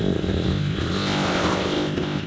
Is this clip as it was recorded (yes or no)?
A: no